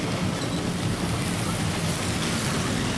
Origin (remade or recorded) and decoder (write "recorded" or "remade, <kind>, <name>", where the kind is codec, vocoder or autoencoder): recorded